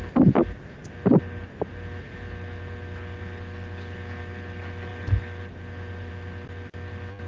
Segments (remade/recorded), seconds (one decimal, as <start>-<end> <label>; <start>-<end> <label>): 0.0-7.3 recorded